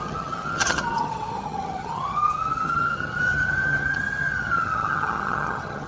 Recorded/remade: remade